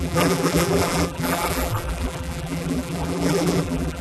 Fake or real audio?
fake